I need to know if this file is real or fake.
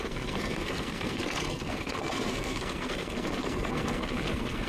fake